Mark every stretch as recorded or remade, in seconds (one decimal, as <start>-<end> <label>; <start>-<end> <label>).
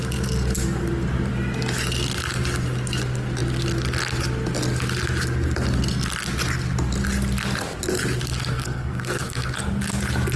0.0-8.5 recorded; 8.5-9.5 remade; 9.5-10.4 recorded